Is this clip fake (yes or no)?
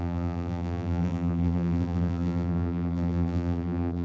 yes